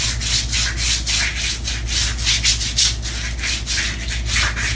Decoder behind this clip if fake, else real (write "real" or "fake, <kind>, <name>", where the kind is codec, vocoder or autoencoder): real